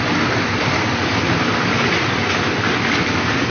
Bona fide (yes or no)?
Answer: yes